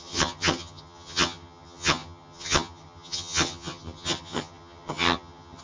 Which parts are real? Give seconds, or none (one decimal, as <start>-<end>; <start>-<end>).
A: none

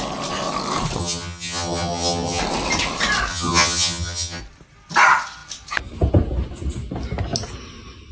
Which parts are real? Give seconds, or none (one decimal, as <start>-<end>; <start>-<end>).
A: 0.0-1.0; 2.4-3.3; 4.4-8.1